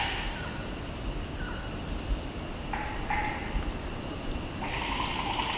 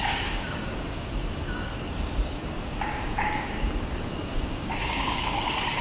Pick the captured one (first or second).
first